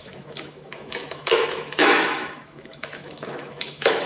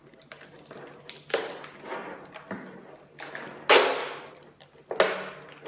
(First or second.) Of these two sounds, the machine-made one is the first